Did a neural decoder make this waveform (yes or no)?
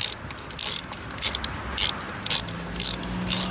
no